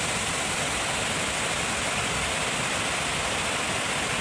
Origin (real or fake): real